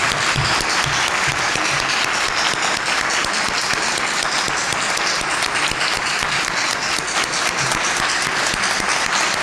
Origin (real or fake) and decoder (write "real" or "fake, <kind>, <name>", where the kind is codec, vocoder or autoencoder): real